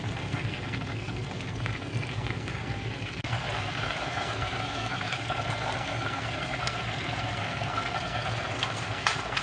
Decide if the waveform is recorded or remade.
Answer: remade